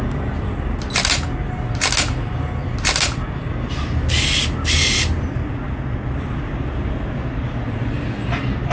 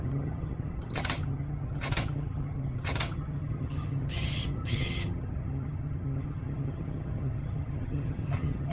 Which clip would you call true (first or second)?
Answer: first